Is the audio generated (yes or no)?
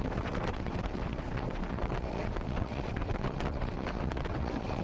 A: yes